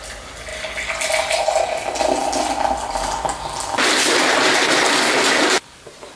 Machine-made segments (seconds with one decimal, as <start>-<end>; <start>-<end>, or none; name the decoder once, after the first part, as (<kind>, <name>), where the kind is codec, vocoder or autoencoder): none